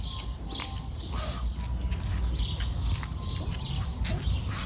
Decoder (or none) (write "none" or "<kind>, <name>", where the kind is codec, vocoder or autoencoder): none